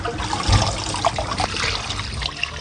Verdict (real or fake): real